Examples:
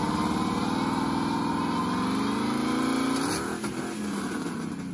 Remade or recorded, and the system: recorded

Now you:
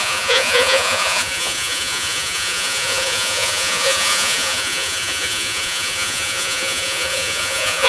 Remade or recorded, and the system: remade, vocoder, Vocos